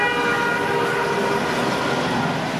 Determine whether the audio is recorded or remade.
recorded